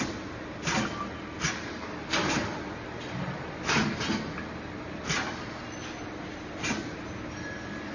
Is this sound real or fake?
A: real